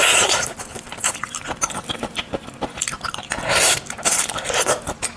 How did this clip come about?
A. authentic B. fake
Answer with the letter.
A